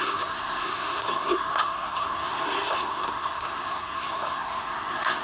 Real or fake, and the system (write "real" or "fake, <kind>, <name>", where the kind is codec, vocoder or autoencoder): fake, codec, SNAC